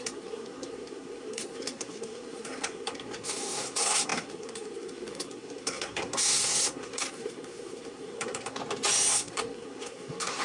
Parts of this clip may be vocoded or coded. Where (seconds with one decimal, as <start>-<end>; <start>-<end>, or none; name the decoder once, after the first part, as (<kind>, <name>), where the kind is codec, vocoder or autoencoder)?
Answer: 0.0-8.6 (codec, SNAC); 9.1-10.4